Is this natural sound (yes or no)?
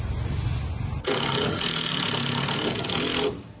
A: yes